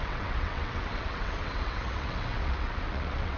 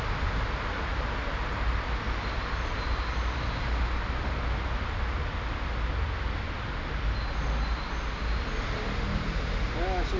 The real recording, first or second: second